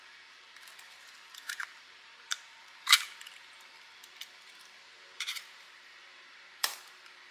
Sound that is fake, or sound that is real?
fake